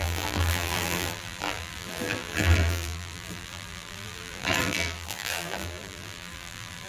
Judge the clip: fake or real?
fake